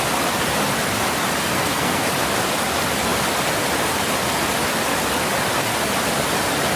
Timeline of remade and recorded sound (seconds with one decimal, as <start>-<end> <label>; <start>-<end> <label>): 0.0-1.5 recorded; 1.5-2.1 remade; 2.1-6.8 recorded